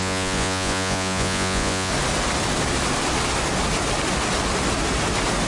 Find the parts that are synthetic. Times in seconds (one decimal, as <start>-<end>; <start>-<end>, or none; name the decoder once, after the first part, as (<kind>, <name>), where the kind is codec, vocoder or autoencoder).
0.0-1.9 (vocoder, Vocos)